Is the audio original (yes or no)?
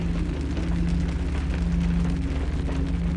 yes